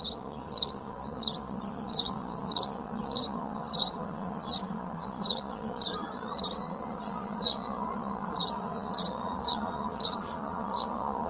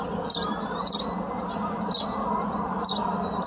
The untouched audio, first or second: second